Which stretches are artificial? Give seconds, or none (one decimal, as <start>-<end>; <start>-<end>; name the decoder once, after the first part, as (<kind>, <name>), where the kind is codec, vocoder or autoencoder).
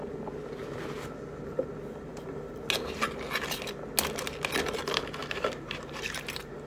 2.1-2.6 (vocoder, BigVGAN v2); 5.2-6.7